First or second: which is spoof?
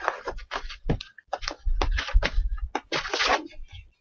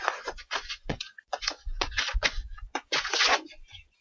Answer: second